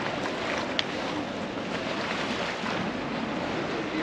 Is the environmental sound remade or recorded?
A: recorded